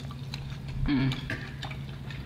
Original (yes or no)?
yes